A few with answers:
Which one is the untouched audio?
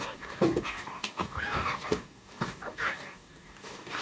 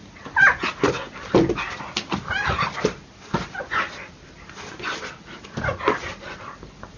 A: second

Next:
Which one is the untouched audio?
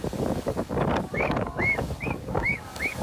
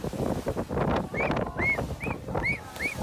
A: second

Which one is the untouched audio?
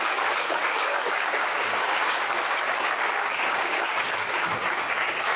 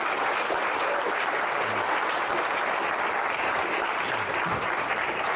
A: second